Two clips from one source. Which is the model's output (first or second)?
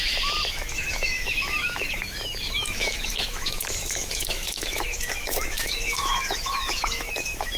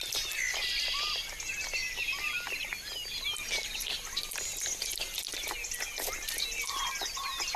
first